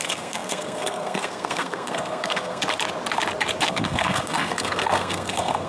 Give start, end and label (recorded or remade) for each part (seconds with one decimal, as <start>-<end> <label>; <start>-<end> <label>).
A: 0.0-2.6 remade; 2.6-3.7 recorded; 3.7-5.7 remade